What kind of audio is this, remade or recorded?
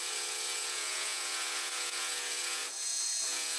remade